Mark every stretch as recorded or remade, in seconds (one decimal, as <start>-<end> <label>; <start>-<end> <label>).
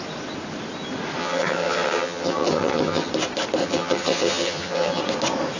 0.0-1.2 recorded; 1.2-3.1 remade; 3.1-3.6 recorded; 3.6-5.0 remade; 5.0-5.6 recorded